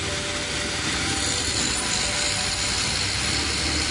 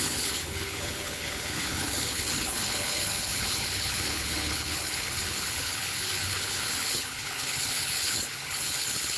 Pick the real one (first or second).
first